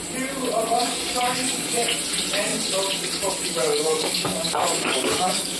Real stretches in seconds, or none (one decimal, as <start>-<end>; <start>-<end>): 0.0-0.8; 1.8-3.7